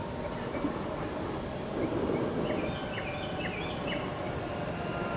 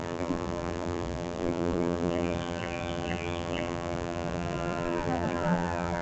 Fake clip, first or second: second